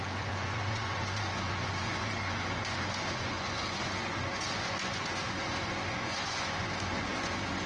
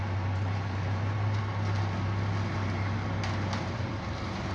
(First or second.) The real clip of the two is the second